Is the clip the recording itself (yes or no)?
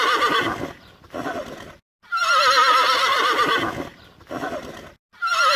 yes